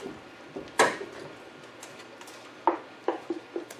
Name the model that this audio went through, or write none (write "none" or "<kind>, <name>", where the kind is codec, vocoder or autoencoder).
none